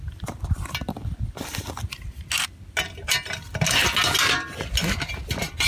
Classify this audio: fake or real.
real